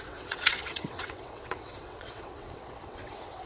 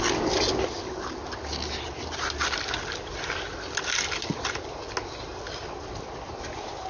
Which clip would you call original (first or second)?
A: second